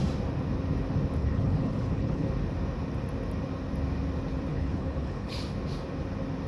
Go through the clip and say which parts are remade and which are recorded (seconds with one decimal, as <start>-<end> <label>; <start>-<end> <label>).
0.0-1.2 recorded; 1.2-2.3 remade; 2.3-4.5 recorded; 4.5-5.4 remade; 5.4-6.5 recorded